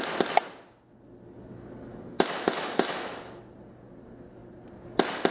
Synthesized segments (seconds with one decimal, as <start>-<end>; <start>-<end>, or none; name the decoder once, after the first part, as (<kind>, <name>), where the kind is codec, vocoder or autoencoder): 1.9-3.4 (autoencoder, DAC-VAE)